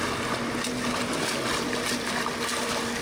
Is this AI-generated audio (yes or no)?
no